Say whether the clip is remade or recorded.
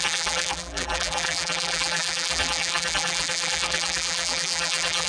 remade